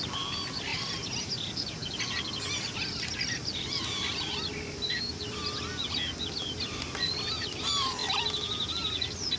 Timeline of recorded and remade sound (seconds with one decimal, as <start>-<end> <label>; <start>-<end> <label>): 0.0-5.4 remade; 5.4-6.3 recorded; 6.3-9.4 remade